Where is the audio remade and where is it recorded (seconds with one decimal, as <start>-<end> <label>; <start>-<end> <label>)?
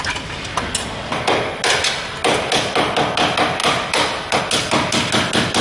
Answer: 0.0-5.6 recorded